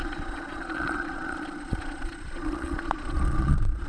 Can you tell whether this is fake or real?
fake